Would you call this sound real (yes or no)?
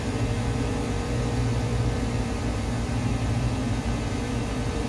no